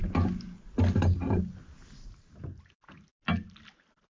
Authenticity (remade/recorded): recorded